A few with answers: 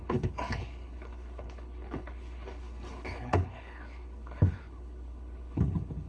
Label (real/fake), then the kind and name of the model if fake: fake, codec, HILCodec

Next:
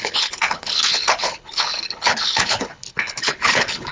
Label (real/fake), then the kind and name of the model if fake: fake, codec, HILCodec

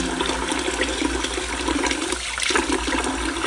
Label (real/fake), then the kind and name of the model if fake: real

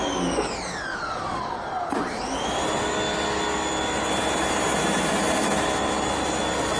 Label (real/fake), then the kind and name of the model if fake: real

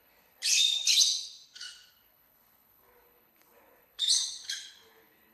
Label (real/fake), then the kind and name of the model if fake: fake, codec, HILCodec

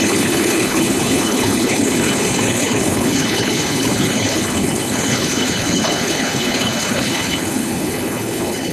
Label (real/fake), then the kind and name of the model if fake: fake, codec, HILCodec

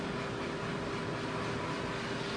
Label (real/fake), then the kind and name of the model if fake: real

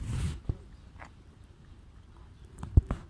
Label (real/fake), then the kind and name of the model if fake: real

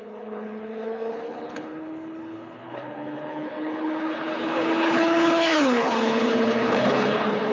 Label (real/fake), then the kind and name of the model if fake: fake, codec, HILCodec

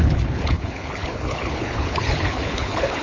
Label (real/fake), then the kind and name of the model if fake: fake, codec, HILCodec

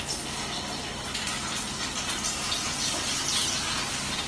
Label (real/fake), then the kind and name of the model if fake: real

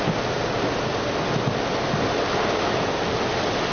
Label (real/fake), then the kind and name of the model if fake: real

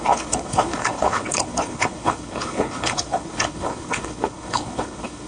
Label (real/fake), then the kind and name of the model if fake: fake, codec, HILCodec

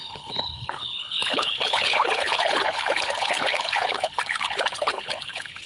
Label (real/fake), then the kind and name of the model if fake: fake, codec, HILCodec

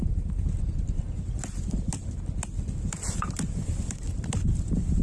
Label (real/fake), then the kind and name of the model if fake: real